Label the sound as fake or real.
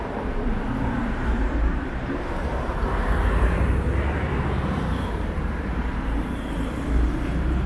fake